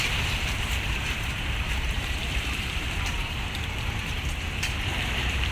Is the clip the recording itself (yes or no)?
no